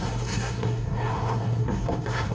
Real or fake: fake